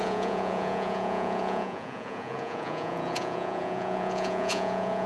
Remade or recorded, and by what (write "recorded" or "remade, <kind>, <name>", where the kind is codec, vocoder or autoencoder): remade, vocoder, Vocos